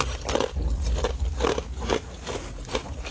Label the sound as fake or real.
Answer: real